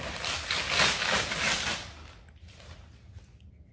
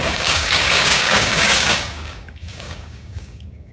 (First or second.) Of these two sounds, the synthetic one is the second